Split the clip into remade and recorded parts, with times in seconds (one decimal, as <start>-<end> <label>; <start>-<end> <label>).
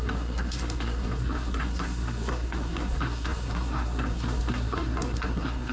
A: 0.0-5.7 remade